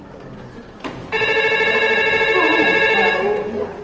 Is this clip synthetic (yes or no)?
no